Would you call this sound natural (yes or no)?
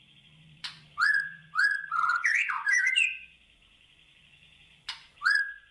no